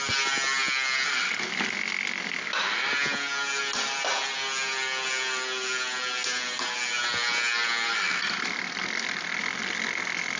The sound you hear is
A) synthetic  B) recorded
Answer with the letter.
B